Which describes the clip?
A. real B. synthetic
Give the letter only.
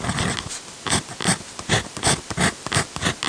A